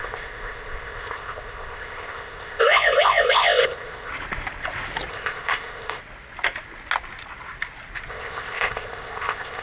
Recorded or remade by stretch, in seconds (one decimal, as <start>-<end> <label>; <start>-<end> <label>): 0.0-4.1 remade; 4.1-5.1 recorded; 5.1-6.0 remade; 6.0-8.1 recorded; 8.1-9.6 remade